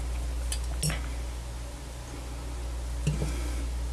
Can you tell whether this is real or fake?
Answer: real